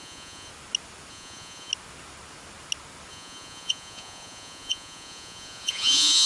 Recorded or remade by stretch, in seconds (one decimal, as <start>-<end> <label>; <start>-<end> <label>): 0.0-0.5 remade; 0.5-1.1 recorded; 1.1-1.7 remade; 1.7-3.1 recorded; 3.1-6.3 remade